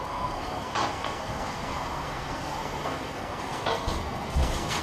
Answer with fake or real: fake